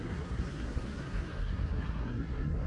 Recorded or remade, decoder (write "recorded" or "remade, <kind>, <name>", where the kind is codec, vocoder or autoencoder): remade, codec, SNAC